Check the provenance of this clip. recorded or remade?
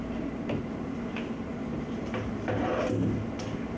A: recorded